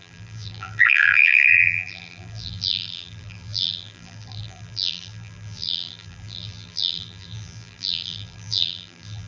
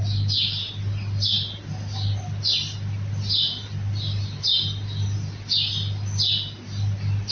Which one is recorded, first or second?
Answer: second